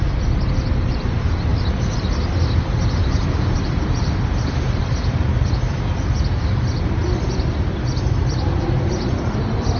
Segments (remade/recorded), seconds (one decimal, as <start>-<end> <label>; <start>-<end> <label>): 0.0-1.5 recorded; 1.5-5.5 remade; 5.5-9.8 recorded